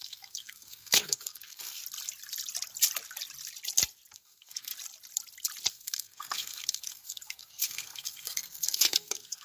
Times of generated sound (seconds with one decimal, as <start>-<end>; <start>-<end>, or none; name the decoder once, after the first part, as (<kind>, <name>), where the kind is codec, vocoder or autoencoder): 0.0-1.8 (codec, SNAC); 4.1-4.7; 5.7-9.4